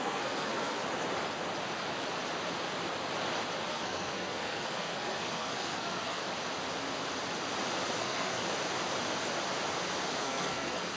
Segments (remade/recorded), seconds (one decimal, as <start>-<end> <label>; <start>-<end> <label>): 0.0-0.8 remade; 0.8-3.7 recorded; 3.7-6.2 remade; 6.2-8.0 recorded; 8.0-8.4 remade; 8.4-10.2 recorded; 10.2-11.0 remade